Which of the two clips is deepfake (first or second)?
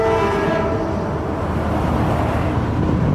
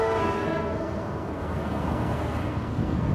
second